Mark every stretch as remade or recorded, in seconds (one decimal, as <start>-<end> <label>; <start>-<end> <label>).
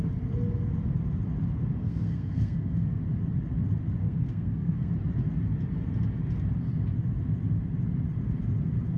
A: 0.0-1.8 recorded; 1.8-3.0 remade; 3.0-4.0 recorded; 4.0-4.9 remade; 4.9-9.0 recorded